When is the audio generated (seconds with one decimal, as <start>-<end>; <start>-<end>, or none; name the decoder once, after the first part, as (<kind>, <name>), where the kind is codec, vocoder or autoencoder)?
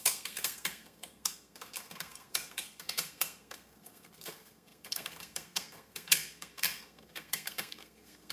0.0-8.3 (codec, SNAC)